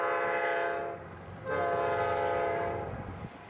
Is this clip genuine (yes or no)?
yes